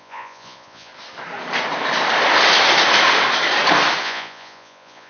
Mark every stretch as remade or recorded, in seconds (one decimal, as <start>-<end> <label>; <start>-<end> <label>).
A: 0.0-0.9 remade; 0.9-4.0 recorded; 4.0-5.1 remade